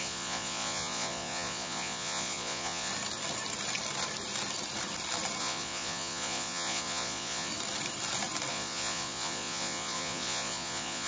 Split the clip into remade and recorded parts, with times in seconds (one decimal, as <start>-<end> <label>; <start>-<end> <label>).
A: 0.0-2.9 remade; 2.9-5.4 recorded; 5.4-7.5 remade; 7.5-8.5 recorded; 8.5-11.1 remade